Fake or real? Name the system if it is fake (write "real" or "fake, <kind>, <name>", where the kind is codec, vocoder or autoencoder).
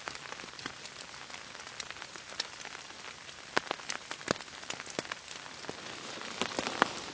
real